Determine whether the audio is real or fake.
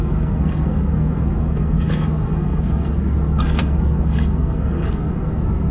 fake